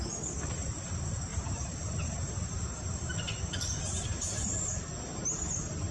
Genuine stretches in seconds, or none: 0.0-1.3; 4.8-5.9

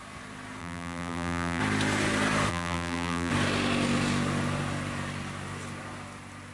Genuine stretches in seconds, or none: 0.0-0.6; 1.6-2.5; 3.3-6.5